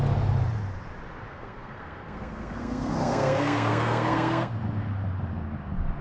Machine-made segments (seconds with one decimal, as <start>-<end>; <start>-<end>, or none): 1.3-4.5